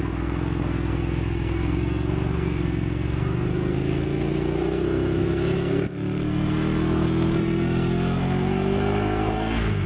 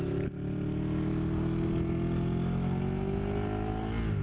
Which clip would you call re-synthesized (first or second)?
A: first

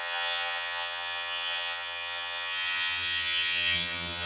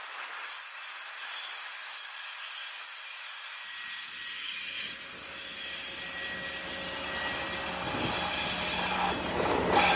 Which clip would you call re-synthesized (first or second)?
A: first